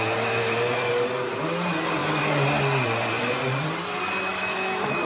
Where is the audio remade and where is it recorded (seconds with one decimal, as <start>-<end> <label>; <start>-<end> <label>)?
0.0-4.3 recorded; 4.3-5.1 remade